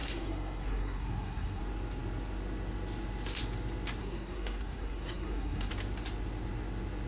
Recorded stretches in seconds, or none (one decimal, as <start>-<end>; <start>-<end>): 1.6-4.0; 5.7-7.1